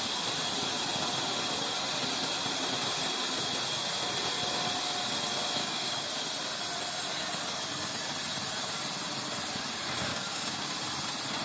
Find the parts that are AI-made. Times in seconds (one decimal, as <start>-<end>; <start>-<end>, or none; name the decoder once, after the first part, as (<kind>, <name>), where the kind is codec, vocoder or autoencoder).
5.6-6.1 (codec, DAC); 10.1-10.7